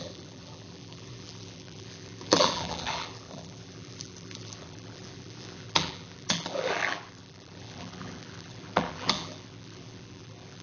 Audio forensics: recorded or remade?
remade